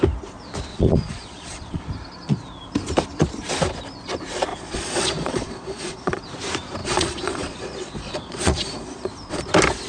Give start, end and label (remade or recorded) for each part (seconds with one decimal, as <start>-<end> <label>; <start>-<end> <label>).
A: 0.0-0.7 recorded; 0.7-1.8 remade; 1.8-4.5 recorded; 4.5-6.2 remade; 6.2-6.8 recorded; 6.8-9.4 remade; 9.4-9.9 recorded